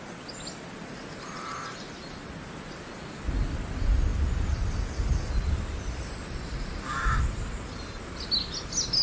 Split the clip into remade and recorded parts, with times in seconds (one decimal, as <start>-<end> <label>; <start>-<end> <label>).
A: 0.0-9.0 recorded